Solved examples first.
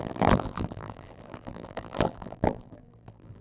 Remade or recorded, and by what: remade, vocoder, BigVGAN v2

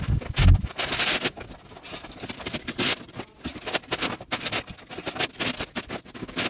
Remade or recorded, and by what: recorded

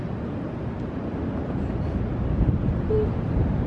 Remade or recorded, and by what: recorded